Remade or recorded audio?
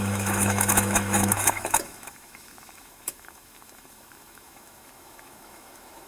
remade